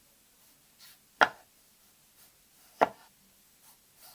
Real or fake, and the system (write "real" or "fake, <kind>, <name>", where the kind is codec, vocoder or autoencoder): real